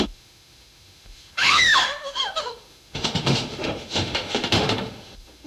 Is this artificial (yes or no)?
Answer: yes